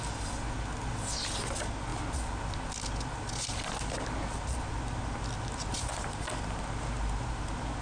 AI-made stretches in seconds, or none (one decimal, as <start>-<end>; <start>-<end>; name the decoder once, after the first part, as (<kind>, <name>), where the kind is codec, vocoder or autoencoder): none